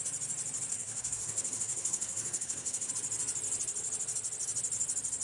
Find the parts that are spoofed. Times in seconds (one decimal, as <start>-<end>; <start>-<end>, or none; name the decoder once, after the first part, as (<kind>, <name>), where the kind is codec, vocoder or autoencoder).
0.7-2.9 (codec, SNAC)